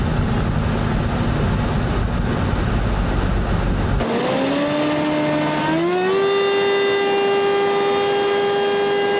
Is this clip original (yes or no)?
yes